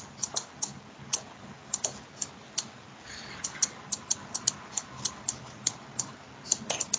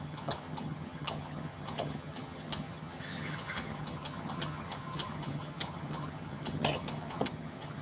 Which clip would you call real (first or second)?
first